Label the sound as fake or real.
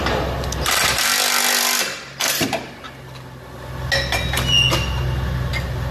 real